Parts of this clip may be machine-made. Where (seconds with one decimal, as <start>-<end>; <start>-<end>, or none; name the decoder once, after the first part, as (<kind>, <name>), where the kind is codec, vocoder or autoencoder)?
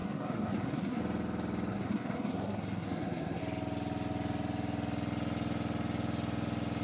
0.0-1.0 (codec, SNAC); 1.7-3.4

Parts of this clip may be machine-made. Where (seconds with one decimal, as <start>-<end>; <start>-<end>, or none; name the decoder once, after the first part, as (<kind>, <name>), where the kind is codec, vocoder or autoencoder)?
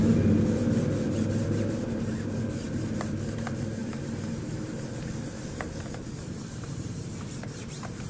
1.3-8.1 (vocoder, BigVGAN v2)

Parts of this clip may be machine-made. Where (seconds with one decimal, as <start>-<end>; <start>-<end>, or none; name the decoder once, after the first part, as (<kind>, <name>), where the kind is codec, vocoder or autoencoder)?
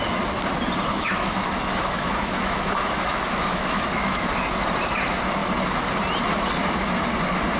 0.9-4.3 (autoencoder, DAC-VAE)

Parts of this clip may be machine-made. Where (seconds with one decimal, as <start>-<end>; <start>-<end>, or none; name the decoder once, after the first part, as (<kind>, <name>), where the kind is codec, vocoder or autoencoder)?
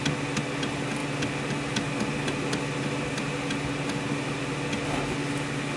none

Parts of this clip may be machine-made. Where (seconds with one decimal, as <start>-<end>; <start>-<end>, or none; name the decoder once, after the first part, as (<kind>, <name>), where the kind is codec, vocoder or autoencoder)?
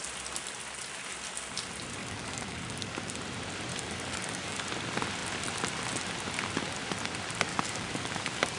2.0-3.2 (codec, DAC); 3.7-4.6; 7.5-8.6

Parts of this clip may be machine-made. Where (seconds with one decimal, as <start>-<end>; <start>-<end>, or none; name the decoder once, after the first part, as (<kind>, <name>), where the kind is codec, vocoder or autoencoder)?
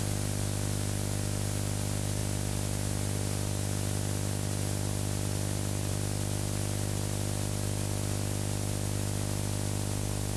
none